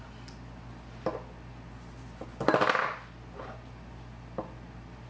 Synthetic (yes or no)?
no